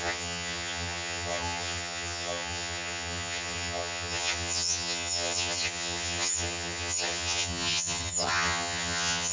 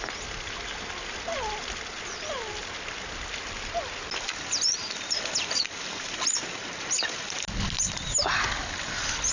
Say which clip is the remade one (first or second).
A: first